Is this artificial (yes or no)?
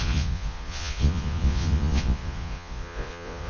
yes